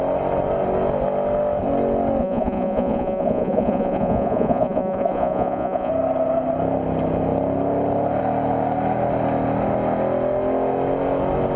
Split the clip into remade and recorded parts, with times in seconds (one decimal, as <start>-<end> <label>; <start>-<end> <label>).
0.0-2.2 recorded; 2.2-5.9 remade; 5.9-11.6 recorded